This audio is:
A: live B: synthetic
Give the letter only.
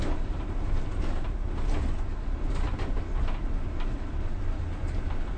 A